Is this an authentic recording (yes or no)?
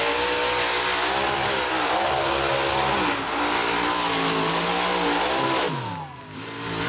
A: yes